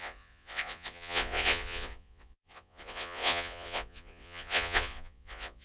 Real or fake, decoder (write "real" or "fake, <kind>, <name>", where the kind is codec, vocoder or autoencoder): fake, vocoder, Vocos